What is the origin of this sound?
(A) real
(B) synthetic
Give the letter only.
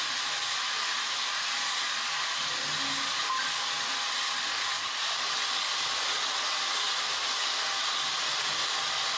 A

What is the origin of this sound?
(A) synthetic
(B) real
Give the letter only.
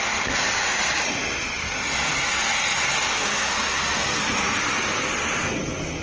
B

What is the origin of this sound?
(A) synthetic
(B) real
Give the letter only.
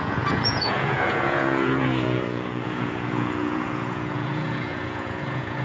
A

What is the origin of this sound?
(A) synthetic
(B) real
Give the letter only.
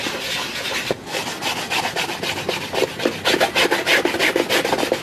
B